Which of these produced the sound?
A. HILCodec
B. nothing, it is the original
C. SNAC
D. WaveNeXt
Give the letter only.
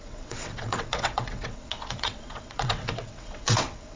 D